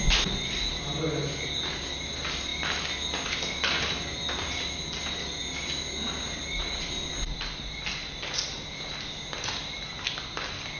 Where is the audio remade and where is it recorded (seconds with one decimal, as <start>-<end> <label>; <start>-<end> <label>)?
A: 0.0-10.8 recorded